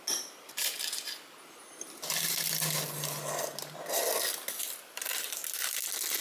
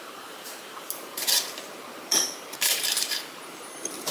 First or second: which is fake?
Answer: second